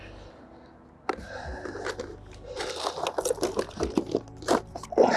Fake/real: real